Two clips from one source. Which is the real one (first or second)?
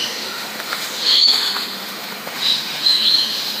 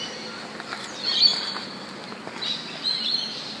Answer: second